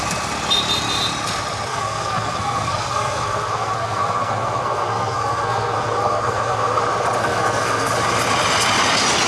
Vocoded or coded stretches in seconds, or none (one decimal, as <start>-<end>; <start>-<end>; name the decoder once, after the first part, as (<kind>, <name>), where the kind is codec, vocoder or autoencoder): 1.7-6.8 (codec, SNAC); 7.2-7.9